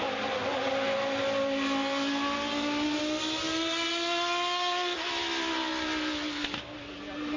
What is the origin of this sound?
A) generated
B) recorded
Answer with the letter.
B